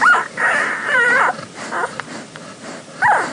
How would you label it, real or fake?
fake